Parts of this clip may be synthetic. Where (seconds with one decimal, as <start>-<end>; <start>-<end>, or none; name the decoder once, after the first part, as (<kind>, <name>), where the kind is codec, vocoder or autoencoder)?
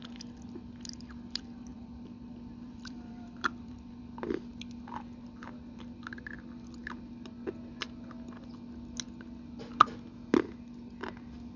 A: 1.7-4.0 (vocoder, BigVGAN v2)